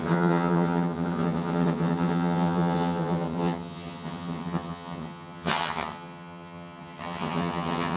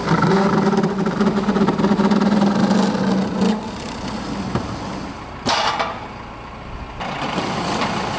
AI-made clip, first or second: first